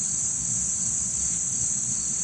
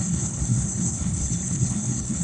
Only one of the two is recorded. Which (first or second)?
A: first